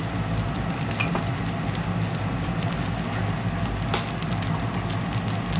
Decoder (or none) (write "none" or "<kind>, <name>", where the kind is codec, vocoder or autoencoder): none